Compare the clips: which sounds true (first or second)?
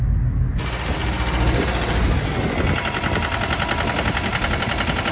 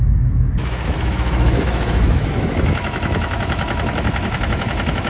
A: first